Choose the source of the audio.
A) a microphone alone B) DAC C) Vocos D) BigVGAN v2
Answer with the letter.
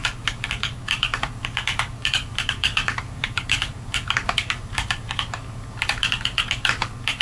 B